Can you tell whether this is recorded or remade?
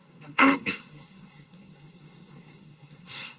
remade